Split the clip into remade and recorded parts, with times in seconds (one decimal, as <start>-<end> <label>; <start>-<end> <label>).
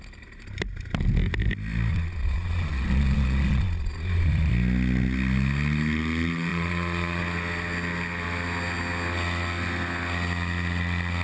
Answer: 0.0-1.9 recorded; 1.9-4.5 remade; 4.5-6.5 recorded; 6.5-7.2 remade; 7.2-11.2 recorded